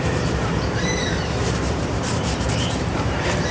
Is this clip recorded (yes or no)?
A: no